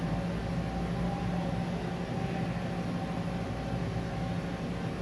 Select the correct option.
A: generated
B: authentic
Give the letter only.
B